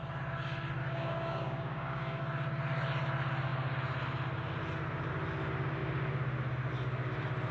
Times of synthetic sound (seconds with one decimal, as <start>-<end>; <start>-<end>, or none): 0.8-2.2